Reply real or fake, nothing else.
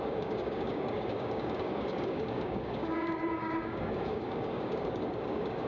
fake